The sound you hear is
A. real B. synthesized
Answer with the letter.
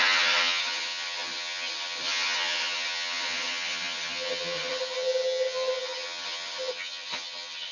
B